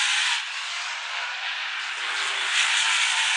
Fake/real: real